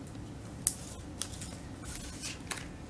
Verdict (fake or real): real